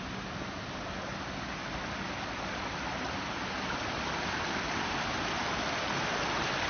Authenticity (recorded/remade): recorded